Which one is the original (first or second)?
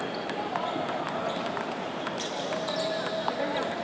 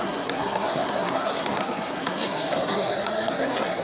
first